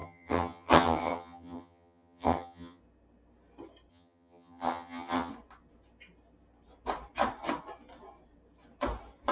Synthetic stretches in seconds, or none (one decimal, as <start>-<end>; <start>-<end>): 0.0-2.8; 3.9-5.3